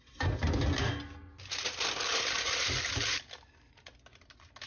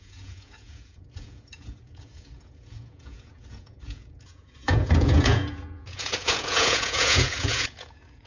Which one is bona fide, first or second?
first